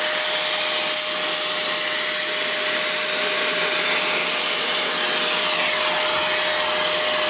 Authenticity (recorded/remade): recorded